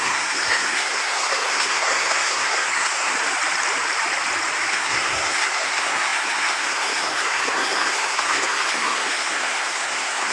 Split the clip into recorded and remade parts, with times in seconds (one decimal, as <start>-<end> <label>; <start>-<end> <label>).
0.0-3.1 remade; 3.1-4.7 recorded; 4.7-10.3 remade